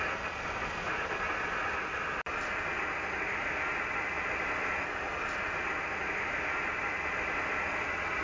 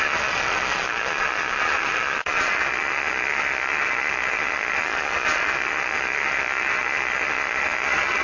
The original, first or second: first